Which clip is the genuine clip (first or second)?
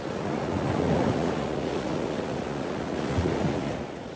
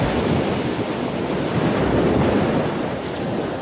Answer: second